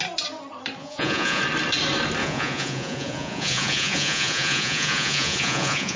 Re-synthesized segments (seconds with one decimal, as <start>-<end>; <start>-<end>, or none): 0.8-1.4; 2.2-6.0